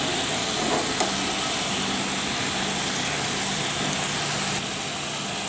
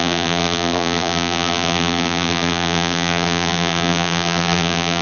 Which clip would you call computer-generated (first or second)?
second